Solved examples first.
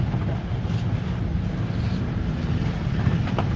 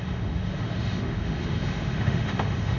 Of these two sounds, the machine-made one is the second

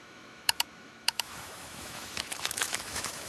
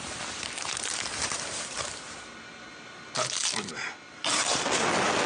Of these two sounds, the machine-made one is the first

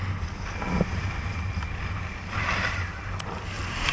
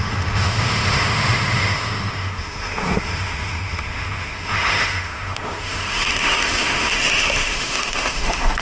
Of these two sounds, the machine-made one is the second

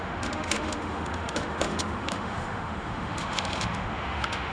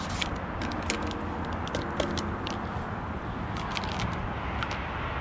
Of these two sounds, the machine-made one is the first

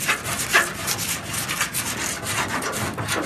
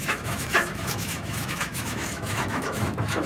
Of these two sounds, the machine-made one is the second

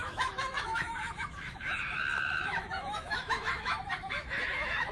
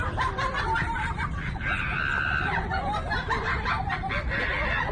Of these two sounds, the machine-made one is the first